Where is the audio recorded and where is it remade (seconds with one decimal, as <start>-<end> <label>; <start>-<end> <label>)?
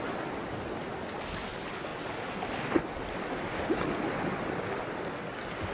0.0-5.7 recorded